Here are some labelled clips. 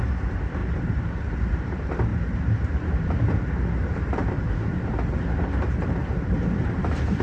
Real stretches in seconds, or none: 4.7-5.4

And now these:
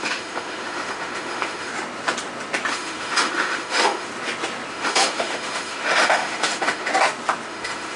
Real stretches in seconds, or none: 1.7-2.7; 4.1-4.7; 6.9-7.5

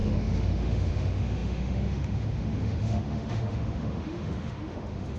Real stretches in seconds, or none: none

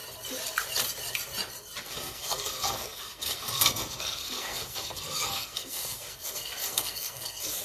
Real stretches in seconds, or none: 0.0-1.8

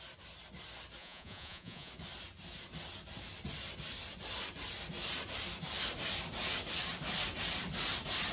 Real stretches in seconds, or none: 0.0-1.0; 1.9-8.3

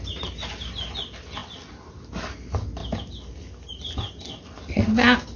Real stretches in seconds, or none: 0.0-2.8; 4.0-5.4

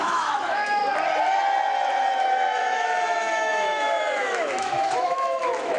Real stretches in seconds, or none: 0.8-2.2

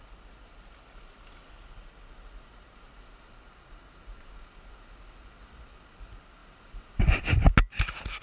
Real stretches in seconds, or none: 0.0-6.4; 7.3-8.2